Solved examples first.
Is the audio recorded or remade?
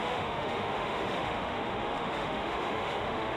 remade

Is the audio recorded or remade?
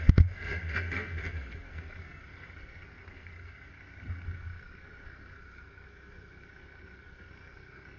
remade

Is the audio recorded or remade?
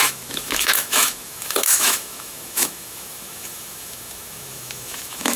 remade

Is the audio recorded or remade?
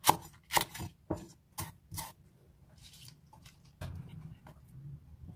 recorded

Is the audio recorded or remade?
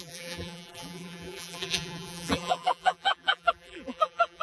remade